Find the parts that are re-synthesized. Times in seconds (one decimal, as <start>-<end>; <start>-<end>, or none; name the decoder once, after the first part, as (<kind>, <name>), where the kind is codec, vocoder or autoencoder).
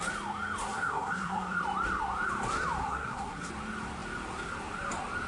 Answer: 0.6-1.6 (codec, SNAC); 2.8-3.5